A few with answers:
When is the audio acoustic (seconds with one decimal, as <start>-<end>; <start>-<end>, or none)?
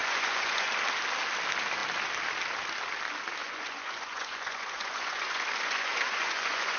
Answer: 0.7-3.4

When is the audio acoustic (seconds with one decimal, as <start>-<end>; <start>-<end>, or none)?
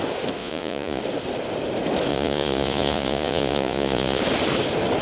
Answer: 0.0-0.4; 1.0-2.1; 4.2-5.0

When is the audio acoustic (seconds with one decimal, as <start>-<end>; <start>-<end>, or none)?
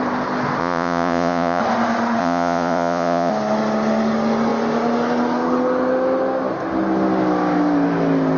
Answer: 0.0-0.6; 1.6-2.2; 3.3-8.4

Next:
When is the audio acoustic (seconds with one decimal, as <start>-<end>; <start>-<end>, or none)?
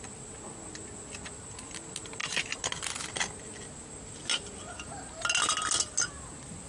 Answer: 0.0-6.7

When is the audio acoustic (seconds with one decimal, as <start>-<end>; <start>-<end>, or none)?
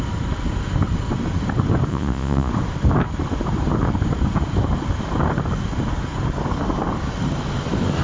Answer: 0.0-1.9; 2.5-8.0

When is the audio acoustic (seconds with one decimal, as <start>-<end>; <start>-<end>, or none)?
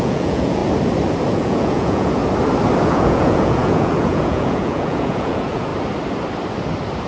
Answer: 0.6-1.3; 2.2-2.9; 5.7-7.1